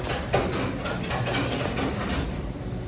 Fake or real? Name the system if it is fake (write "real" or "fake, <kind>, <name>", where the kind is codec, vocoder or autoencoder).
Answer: real